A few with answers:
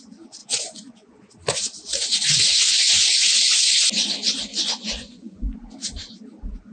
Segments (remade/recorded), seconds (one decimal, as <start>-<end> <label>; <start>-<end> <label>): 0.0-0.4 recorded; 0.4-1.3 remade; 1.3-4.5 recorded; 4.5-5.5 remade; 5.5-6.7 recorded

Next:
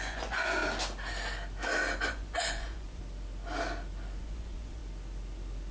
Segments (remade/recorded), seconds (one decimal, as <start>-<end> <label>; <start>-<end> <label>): 0.0-0.6 remade; 0.6-2.1 recorded; 2.1-3.0 remade; 3.0-4.2 recorded; 4.2-4.8 remade; 4.8-5.7 recorded

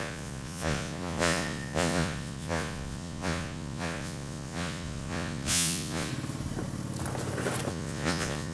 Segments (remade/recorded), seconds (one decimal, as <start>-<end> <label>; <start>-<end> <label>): 0.0-6.1 remade; 6.1-7.7 recorded; 7.7-8.5 remade

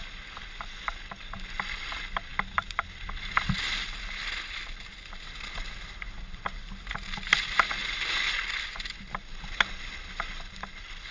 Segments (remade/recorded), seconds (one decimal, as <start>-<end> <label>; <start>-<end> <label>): 0.0-11.1 recorded